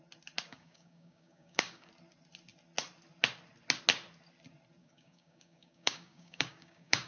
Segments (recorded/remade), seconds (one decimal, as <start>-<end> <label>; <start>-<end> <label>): 0.0-0.5 recorded; 0.5-1.9 remade; 1.9-4.8 recorded; 4.8-7.1 remade